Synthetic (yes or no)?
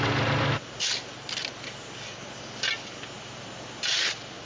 no